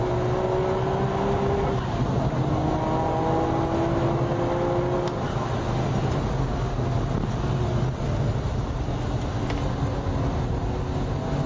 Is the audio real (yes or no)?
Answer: yes